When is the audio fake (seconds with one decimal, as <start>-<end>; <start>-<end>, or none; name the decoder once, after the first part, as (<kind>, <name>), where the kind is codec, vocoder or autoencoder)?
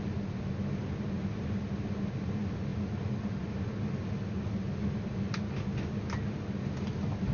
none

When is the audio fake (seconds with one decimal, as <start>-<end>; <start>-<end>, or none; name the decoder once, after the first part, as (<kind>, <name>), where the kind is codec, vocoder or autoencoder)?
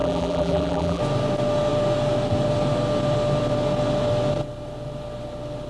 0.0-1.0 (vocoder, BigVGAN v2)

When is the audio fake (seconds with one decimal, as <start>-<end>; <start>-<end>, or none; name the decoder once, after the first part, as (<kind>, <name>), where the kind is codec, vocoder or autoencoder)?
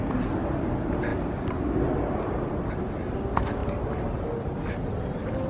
none